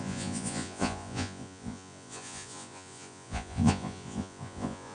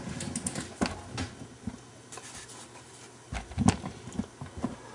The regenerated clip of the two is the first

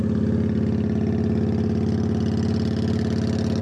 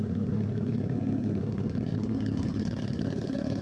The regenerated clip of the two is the second